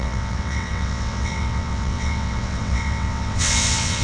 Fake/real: fake